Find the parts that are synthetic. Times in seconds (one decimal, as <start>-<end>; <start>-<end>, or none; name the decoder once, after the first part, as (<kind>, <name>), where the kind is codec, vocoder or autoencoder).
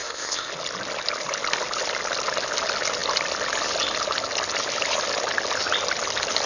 0.0-0.5 (codec, ZipCodec)